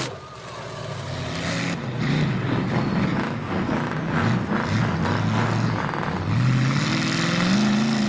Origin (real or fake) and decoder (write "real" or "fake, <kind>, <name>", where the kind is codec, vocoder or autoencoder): real